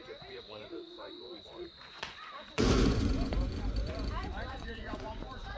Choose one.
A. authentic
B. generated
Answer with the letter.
B